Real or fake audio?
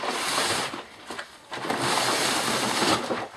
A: real